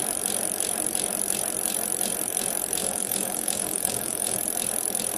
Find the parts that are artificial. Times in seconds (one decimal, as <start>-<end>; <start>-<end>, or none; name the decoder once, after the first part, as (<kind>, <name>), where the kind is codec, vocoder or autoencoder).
2.8-4.4 (autoencoder, DAC-VAE)